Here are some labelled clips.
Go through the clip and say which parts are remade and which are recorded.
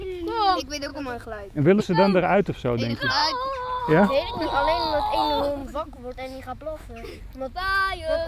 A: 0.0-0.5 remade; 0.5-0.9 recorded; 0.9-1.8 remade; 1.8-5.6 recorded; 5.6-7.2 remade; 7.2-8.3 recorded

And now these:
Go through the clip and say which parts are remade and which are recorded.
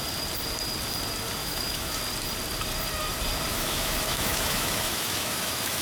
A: 0.0-1.4 recorded; 1.4-2.0 remade; 2.0-3.5 recorded; 3.5-5.8 remade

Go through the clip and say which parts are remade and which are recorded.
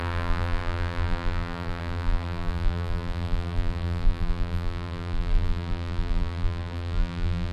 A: 0.0-7.5 remade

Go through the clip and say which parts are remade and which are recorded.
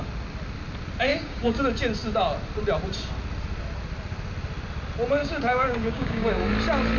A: 0.0-1.1 recorded; 1.1-1.6 remade; 1.6-5.2 recorded; 5.2-6.5 remade; 6.5-7.0 recorded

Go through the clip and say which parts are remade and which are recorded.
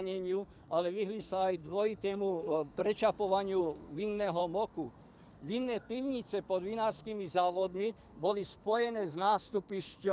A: 0.0-2.8 remade; 2.8-3.6 recorded; 3.6-4.4 remade; 4.4-5.3 recorded; 5.3-6.1 remade; 6.1-7.0 recorded; 7.0-10.1 remade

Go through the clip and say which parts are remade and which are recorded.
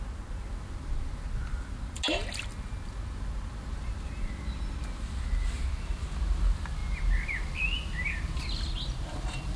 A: 0.0-9.6 recorded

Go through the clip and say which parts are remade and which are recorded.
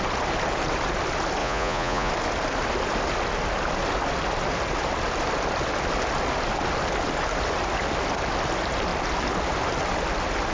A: 0.0-1.4 recorded; 1.4-2.1 remade; 2.1-10.5 recorded